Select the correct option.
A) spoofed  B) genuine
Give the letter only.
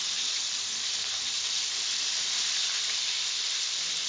B